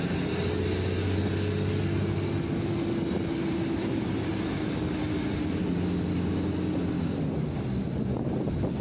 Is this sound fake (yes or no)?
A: no